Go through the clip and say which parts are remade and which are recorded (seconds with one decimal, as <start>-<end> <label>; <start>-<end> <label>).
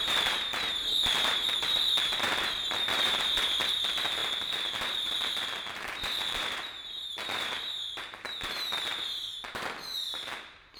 0.0-10.8 remade